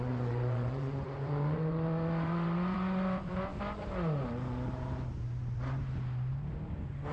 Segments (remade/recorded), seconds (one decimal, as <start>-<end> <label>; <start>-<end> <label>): 0.0-3.5 remade; 3.5-7.1 recorded

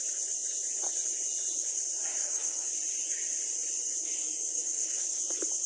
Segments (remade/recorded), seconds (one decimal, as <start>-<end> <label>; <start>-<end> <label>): 0.0-2.2 recorded; 2.2-2.7 remade; 2.7-4.0 recorded; 4.0-5.2 remade; 5.2-5.7 recorded

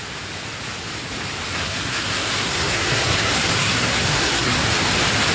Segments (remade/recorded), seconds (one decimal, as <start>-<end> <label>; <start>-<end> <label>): 0.0-1.5 recorded; 1.5-4.7 remade; 4.7-5.3 recorded